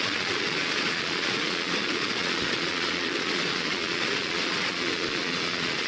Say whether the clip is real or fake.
fake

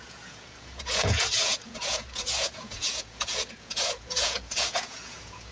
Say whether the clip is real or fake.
fake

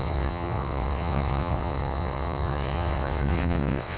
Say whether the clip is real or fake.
fake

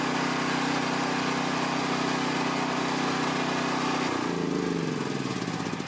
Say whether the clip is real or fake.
real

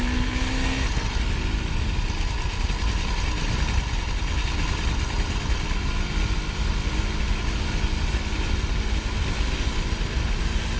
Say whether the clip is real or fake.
real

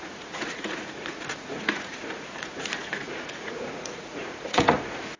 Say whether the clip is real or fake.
fake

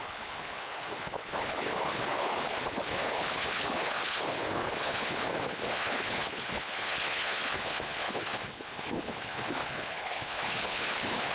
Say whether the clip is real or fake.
fake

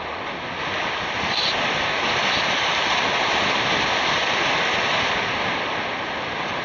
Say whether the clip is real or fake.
real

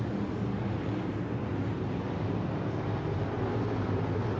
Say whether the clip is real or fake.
real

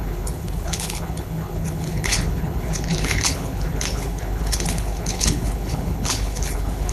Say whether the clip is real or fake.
fake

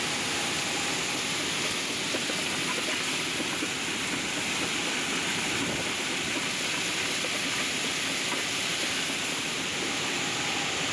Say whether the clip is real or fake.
real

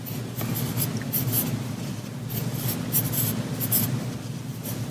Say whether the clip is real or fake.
real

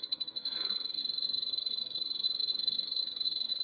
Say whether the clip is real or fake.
fake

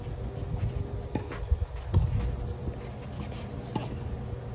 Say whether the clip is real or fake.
real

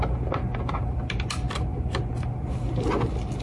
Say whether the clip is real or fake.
real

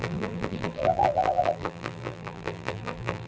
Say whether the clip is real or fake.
fake